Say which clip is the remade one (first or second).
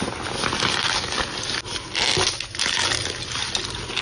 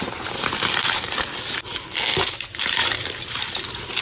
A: second